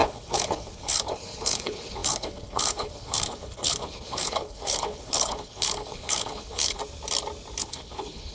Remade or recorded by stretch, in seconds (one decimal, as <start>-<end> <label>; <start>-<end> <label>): 0.0-6.8 remade; 6.8-7.6 recorded; 7.6-8.3 remade